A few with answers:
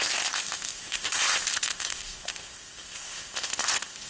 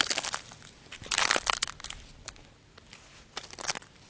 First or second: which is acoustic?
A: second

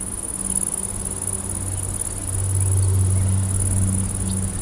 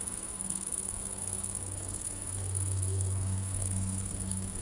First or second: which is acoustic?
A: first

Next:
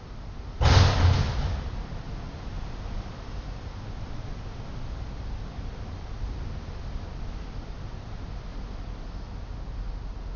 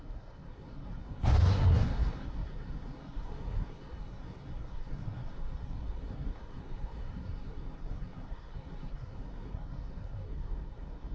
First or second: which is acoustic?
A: first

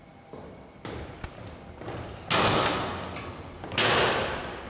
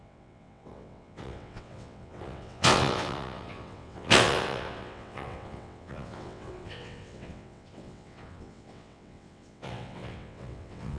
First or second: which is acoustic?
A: first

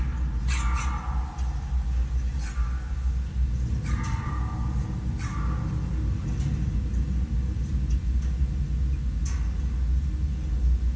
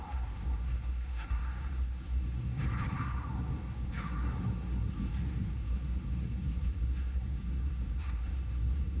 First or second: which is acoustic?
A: first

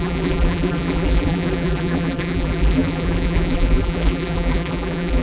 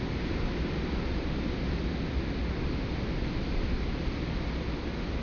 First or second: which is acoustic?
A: second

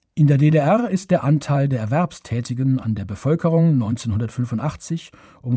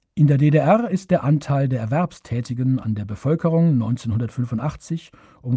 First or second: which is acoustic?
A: second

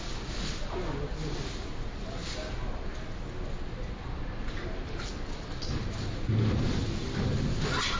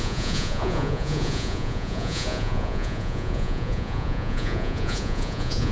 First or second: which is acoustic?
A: first